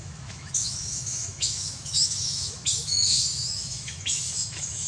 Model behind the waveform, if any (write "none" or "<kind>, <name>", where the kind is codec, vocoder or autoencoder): autoencoder, DAC-VAE